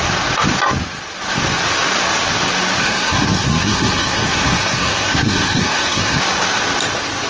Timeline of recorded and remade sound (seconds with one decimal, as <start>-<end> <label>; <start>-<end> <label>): 0.0-2.8 recorded; 2.8-6.2 remade; 6.2-7.3 recorded